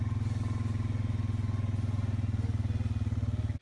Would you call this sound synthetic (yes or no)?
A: no